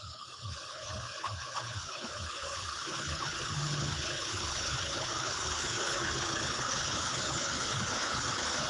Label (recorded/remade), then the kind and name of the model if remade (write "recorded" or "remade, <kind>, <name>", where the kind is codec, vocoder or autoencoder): remade, codec, HILCodec